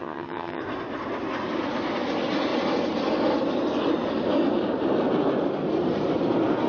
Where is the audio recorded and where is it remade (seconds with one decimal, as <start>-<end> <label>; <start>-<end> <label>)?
0.0-0.6 remade; 0.6-6.7 recorded